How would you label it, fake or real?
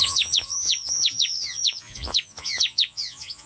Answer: fake